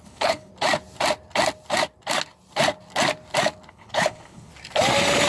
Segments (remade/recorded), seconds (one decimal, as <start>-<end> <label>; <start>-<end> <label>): 0.0-0.5 remade; 0.5-3.7 recorded; 3.7-4.5 remade; 4.5-5.3 recorded